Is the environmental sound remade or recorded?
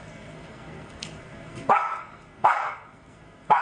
remade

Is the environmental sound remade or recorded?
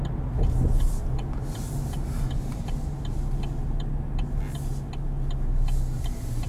recorded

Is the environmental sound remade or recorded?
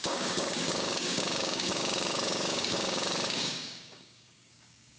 remade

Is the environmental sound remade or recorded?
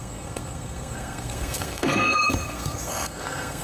remade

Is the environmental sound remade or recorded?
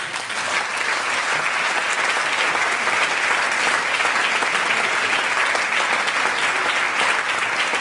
recorded